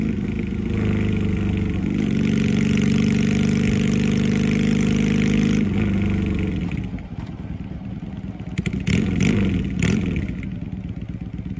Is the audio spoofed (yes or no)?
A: no